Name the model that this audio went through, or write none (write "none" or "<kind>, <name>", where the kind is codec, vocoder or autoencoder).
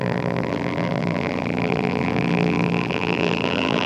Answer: vocoder, BigVGAN v2